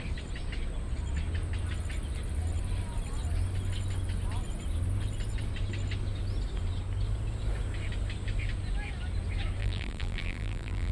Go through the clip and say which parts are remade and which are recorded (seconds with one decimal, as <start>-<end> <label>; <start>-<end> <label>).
0.0-9.6 recorded; 9.6-10.9 remade